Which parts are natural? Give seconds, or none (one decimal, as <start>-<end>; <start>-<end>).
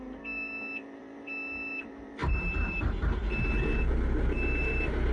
3.2-3.9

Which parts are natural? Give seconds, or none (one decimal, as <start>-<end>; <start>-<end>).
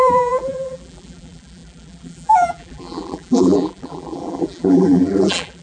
none